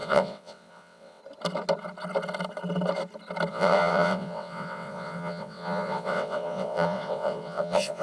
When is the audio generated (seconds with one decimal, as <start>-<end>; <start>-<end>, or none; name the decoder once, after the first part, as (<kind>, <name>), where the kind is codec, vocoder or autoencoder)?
0.0-1.2 (vocoder, WaveNeXt); 3.5-8.0